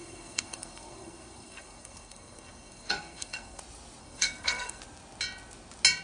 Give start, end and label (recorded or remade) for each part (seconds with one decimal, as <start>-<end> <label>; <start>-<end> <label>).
0.0-3.6 remade; 3.6-4.0 recorded; 4.0-4.8 remade; 4.8-6.0 recorded